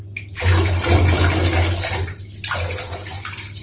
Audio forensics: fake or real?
real